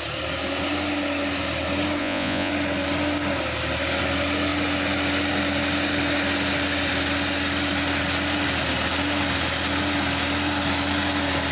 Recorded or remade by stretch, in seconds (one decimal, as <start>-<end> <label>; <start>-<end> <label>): 0.0-2.0 recorded; 2.0-2.5 remade; 2.5-11.5 recorded